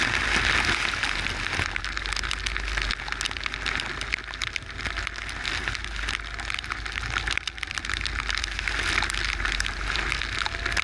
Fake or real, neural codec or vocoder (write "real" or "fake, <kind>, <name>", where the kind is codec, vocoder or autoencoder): real